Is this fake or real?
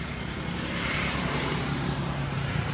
fake